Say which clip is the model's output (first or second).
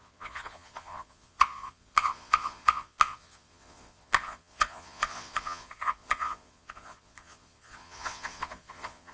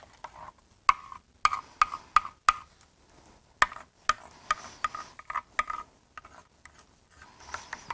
first